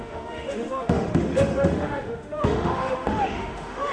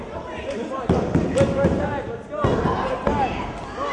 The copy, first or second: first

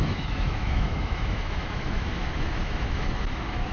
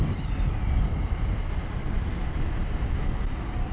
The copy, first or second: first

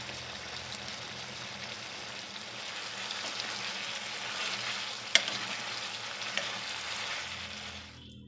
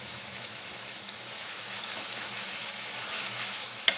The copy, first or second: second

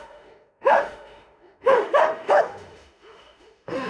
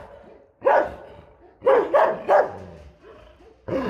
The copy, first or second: first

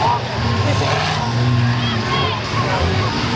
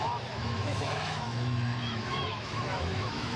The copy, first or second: second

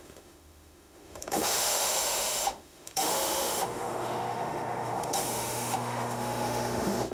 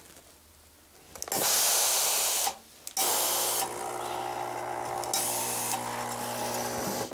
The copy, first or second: first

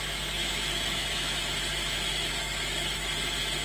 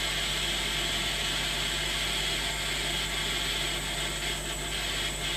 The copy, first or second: first